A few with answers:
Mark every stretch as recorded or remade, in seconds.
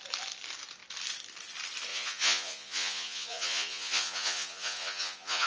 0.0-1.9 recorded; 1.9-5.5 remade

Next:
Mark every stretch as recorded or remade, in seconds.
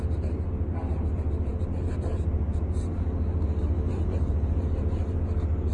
0.0-5.7 recorded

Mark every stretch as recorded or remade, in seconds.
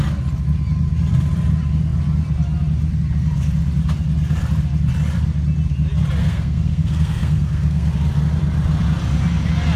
0.0-6.2 recorded; 6.2-7.9 remade; 7.9-9.8 recorded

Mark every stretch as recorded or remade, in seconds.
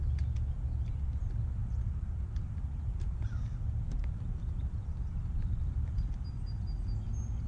0.0-1.6 recorded; 1.6-6.1 remade; 6.1-7.5 recorded